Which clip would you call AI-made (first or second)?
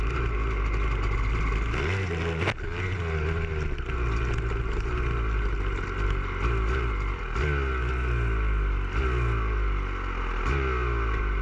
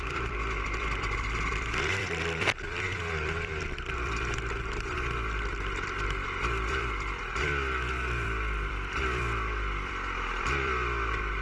second